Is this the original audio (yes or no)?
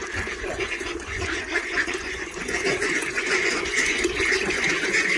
no